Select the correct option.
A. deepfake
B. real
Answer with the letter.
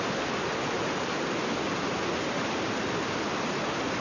B